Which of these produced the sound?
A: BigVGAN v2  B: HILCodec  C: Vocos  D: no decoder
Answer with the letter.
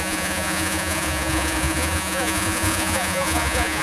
C